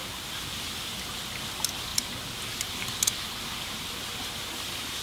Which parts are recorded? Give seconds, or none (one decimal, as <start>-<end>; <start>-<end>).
0.0-5.0